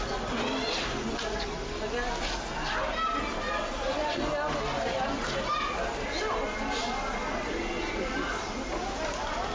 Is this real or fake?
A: real